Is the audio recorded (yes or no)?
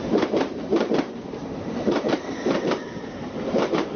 no